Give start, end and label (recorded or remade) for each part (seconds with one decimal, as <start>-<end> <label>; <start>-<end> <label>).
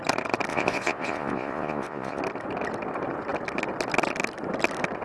0.0-0.5 recorded; 0.5-2.2 remade; 2.2-5.0 recorded